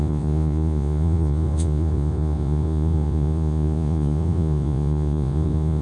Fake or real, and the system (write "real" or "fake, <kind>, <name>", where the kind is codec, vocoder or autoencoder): fake, vocoder, Vocos